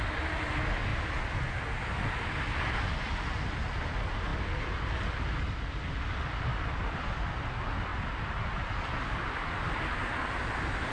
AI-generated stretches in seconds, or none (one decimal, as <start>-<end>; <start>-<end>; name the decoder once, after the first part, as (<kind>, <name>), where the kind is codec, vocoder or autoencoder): 7.9-9.0 (vocoder, BigVGAN v2)